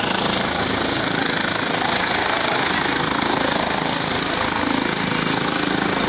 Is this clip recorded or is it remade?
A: recorded